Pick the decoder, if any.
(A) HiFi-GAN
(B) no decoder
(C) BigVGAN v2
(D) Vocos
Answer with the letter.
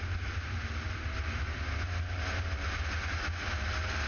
B